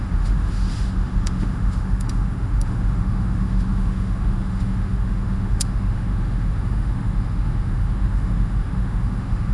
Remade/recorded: remade